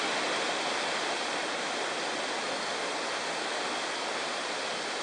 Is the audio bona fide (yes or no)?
yes